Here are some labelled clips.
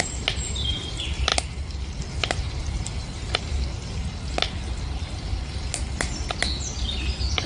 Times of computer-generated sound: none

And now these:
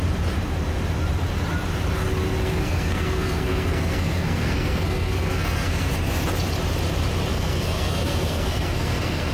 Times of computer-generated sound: 2.4-5.9 (codec, SNAC); 7.3-9.3

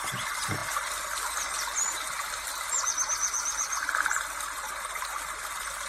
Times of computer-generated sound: none

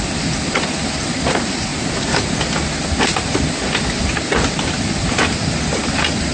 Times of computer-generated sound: none

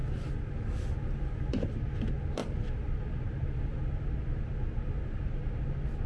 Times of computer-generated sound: none

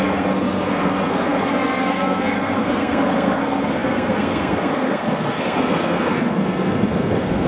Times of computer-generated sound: 0.0-7.5 (codec, SNAC)

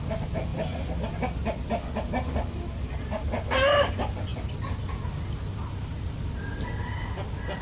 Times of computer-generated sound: none